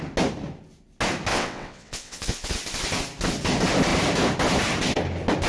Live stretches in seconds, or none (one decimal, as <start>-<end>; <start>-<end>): 0.0-1.3; 2.5-5.5

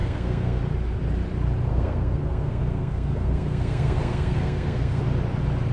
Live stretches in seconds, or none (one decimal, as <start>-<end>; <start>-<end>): 0.6-1.7; 5.0-5.7

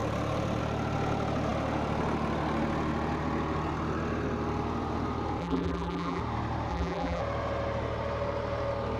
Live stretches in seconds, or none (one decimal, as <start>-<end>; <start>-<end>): 0.0-5.4; 6.2-6.7; 7.2-9.0